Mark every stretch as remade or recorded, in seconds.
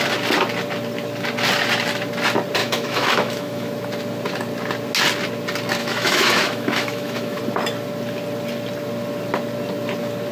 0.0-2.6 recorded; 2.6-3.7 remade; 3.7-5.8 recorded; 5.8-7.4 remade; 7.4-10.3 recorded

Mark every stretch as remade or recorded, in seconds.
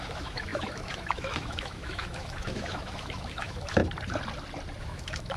0.0-3.8 remade; 3.8-4.8 recorded; 4.8-5.4 remade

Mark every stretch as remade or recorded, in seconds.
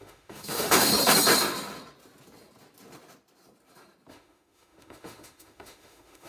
0.0-0.9 remade; 0.9-4.1 recorded; 4.1-6.3 remade